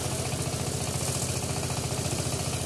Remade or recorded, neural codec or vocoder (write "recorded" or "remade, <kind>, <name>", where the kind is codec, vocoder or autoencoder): recorded